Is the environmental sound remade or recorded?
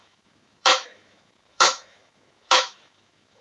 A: remade